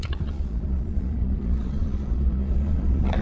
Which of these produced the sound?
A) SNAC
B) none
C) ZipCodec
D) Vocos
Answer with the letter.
D